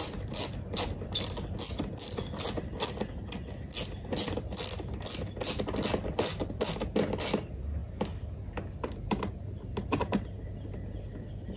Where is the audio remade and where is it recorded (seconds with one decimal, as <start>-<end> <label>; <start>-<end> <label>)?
0.0-11.6 recorded